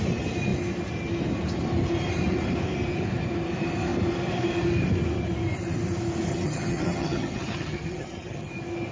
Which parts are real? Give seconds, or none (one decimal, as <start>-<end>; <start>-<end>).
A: 0.0-6.3; 8.5-8.9